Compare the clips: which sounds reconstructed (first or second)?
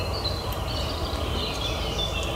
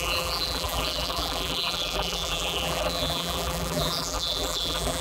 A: second